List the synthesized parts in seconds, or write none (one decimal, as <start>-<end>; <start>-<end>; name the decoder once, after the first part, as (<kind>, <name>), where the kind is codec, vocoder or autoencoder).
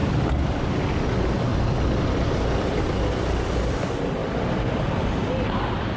1.5-2.8 (vocoder, BigVGAN v2); 4.2-5.5